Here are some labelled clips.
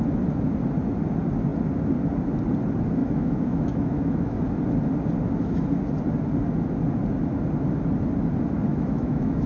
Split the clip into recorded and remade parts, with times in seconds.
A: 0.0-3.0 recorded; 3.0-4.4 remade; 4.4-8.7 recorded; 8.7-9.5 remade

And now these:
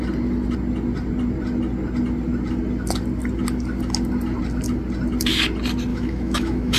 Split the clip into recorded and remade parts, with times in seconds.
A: 0.0-5.9 recorded; 5.9-6.8 remade